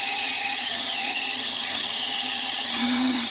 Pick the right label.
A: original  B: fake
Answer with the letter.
B